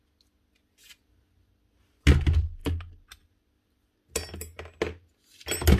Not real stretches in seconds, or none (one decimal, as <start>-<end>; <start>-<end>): none

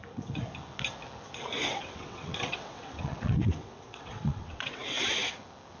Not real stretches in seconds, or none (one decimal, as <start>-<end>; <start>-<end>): 1.6-5.1

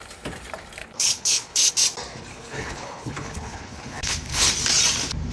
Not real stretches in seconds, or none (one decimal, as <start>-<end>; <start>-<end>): 0.8-1.7; 2.3-4.5

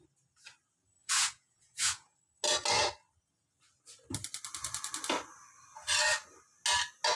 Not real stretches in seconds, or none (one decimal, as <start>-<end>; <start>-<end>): 1.0-2.2

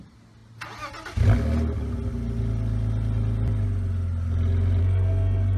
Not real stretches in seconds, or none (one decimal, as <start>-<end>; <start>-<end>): 4.8-5.6